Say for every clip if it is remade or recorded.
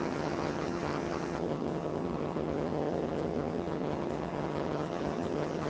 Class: remade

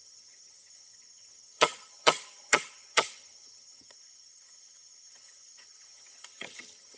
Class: remade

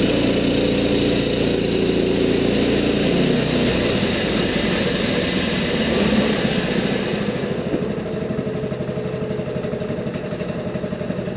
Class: recorded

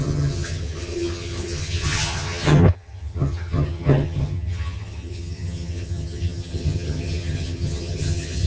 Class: remade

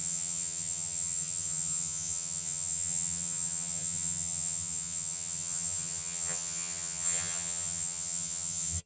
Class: remade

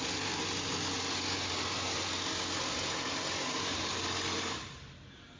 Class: recorded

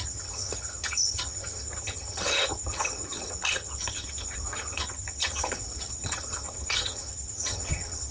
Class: remade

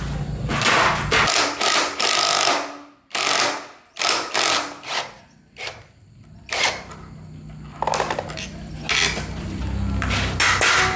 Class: recorded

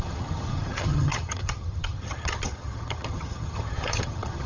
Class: remade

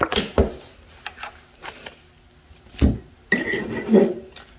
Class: recorded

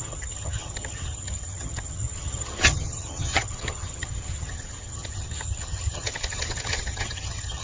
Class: remade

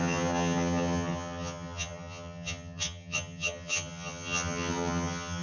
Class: remade